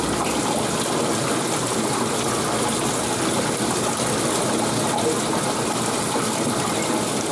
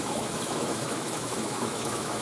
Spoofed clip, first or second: second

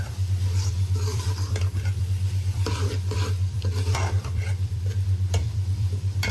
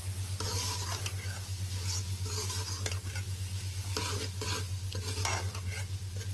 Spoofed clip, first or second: first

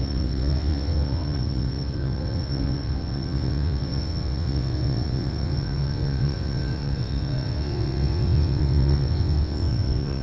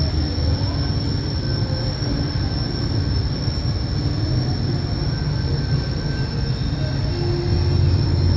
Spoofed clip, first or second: first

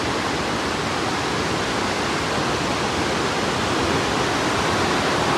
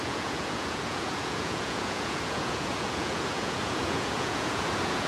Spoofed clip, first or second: second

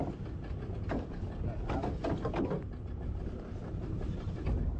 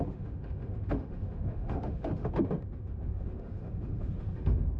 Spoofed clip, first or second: second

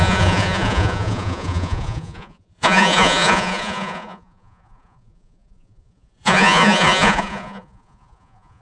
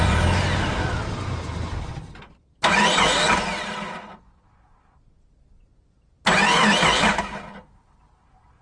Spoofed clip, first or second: first